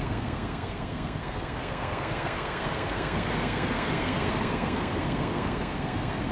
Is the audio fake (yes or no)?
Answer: yes